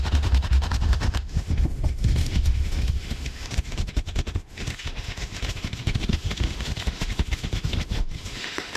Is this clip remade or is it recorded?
remade